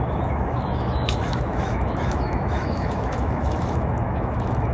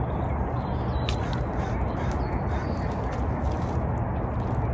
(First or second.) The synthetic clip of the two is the first